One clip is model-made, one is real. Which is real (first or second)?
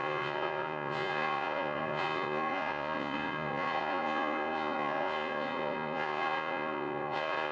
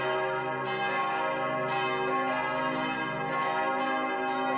second